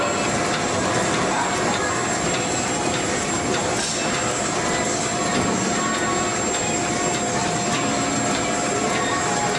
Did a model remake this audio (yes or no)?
no